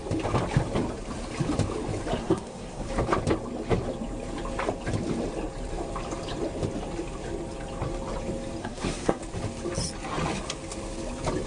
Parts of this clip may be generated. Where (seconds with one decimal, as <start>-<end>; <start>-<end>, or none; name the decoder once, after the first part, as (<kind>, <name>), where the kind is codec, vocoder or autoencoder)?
2.2-2.9 (codec, SNAC); 8.6-9.2